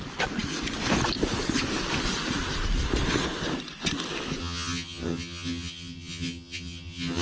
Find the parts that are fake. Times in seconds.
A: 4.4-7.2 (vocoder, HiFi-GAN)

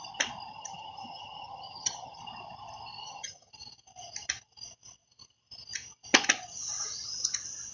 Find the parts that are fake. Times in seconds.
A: 0.5-2.2 (vocoder, HiFi-GAN); 3.0-3.5

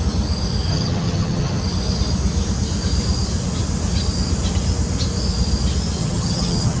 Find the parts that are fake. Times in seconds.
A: 0.7-1.6 (vocoder, HiFi-GAN); 6.0-6.8

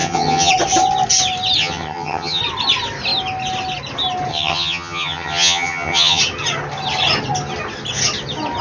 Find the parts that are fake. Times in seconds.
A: 0.0-0.5 (vocoder, HiFi-GAN); 1.6-2.4; 4.3-6.2

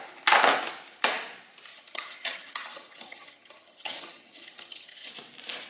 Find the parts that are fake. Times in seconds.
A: 1.7-5.1 (vocoder, HiFi-GAN)

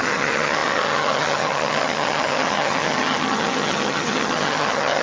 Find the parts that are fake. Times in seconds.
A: 0.0-5.0 (vocoder, HiFi-GAN)

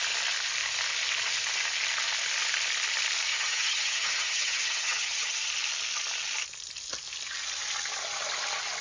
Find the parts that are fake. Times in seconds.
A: 3.3-5.5 (vocoder, HiFi-GAN)